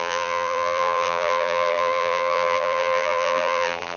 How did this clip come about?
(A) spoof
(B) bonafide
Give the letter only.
A